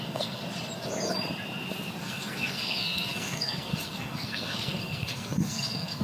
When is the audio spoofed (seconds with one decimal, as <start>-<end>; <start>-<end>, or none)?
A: 0.0-0.4; 2.0-6.0